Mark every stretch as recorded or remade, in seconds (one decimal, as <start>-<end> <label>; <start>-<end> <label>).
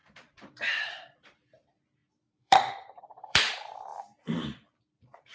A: 0.0-0.8 recorded; 0.8-3.9 remade; 3.9-4.8 recorded; 4.8-5.3 remade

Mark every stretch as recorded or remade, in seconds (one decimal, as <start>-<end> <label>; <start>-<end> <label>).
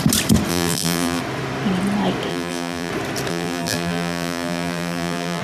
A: 0.0-0.5 recorded; 0.5-1.2 remade; 1.2-2.3 recorded; 2.3-2.9 remade; 2.9-3.3 recorded; 3.3-5.4 remade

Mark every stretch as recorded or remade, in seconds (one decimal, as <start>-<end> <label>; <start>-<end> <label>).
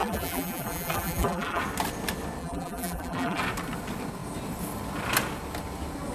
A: 0.0-1.6 remade; 1.6-2.4 recorded; 2.4-3.4 remade; 3.4-6.1 recorded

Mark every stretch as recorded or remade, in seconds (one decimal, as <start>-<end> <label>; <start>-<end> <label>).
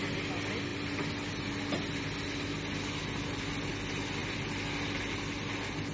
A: 0.0-5.9 recorded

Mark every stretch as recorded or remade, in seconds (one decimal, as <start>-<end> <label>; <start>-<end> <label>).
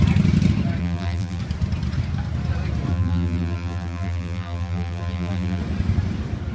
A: 0.0-0.8 recorded; 0.8-1.4 remade; 1.4-2.9 recorded; 2.9-5.6 remade; 5.6-6.5 recorded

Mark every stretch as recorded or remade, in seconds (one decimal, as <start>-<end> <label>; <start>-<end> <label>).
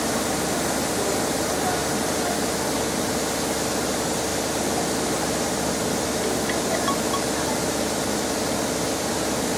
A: 0.0-9.6 recorded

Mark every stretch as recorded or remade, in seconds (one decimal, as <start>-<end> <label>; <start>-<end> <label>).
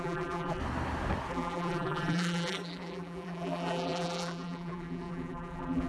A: 0.0-0.6 remade; 0.6-1.3 recorded; 1.3-5.9 remade